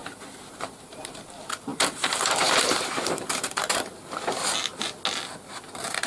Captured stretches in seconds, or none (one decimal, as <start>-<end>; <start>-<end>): 1.2-1.7; 3.9-6.1